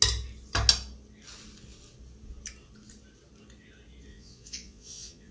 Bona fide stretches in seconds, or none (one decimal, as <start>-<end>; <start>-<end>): 0.0-4.1